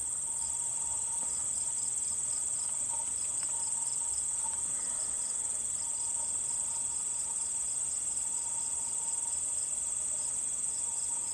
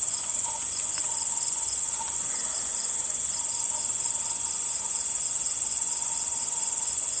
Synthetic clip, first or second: second